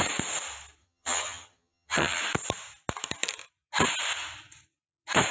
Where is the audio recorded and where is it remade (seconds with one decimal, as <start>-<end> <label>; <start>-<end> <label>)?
0.0-0.8 recorded; 0.8-2.2 remade; 2.2-5.3 recorded